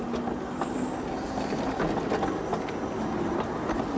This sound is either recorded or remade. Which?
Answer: recorded